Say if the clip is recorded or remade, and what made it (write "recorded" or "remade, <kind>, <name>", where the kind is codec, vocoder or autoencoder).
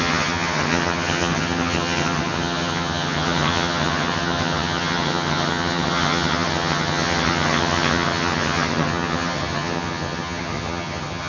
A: remade, vocoder, HiFi-GAN